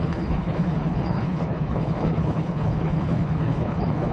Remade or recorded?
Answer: remade